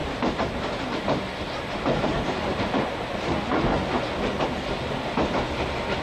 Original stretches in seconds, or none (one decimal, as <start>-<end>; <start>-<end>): 0.0-6.0